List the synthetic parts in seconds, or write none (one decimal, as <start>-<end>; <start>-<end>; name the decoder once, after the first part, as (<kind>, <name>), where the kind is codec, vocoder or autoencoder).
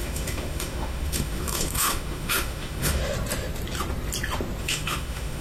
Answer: 0.0-3.0 (autoencoder, DAC-VAE); 4.6-5.4